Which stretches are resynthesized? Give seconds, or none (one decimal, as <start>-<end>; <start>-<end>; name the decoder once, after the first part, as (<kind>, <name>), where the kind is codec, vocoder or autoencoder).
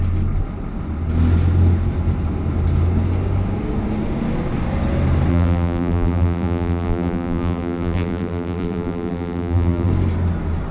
5.3-9.9 (vocoder, BigVGAN v2)